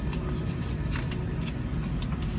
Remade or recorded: recorded